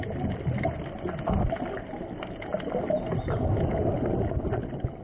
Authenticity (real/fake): real